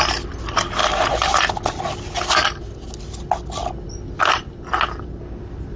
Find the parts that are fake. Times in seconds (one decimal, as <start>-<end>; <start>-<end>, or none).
none